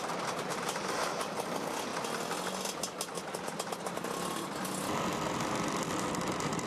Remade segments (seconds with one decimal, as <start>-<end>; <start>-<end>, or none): none